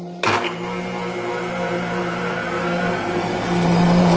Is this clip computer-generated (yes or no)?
yes